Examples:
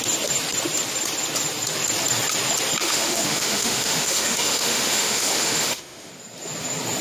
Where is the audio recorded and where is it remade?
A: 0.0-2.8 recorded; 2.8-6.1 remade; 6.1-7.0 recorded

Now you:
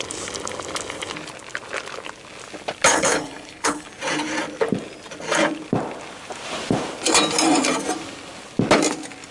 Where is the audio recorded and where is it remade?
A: 0.0-2.9 recorded; 2.9-3.9 remade; 3.9-9.3 recorded

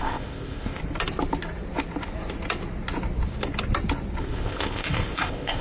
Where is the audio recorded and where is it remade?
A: 0.0-0.8 remade; 0.8-4.2 recorded; 4.2-5.6 remade